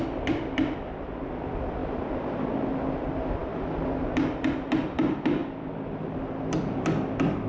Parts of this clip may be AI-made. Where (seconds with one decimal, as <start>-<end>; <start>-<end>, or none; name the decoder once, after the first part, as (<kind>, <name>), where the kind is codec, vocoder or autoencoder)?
none